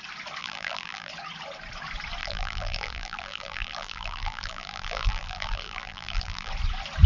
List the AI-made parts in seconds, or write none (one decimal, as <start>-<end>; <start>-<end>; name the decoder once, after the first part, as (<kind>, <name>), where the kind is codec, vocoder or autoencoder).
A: 0.4-1.1 (vocoder, BigVGAN v2); 2.2-6.5